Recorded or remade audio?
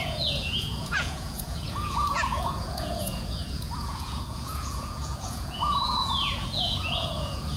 remade